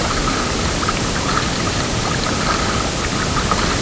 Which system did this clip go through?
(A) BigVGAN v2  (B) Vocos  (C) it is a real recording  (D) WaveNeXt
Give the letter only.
C